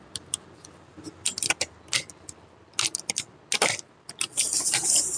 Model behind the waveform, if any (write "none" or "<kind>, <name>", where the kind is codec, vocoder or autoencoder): none